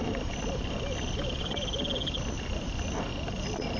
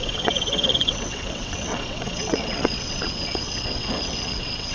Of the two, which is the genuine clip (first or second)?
first